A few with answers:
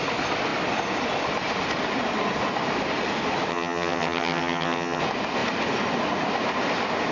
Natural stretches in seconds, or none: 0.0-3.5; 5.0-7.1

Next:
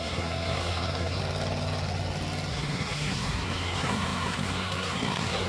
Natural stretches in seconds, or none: 1.2-2.5

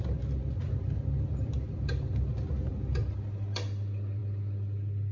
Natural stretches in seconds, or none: 0.0-5.1

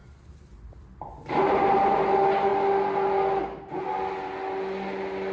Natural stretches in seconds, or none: 0.0-5.3

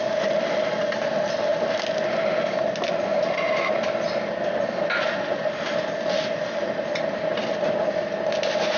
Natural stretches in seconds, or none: 0.0-8.8

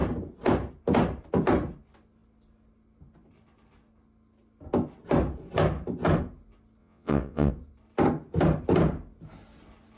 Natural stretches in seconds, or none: 0.0-6.8; 7.5-10.0

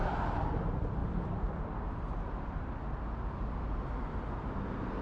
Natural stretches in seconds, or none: 0.0-5.0

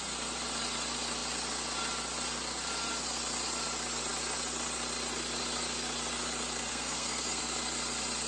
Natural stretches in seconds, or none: 0.0-6.7; 7.4-8.3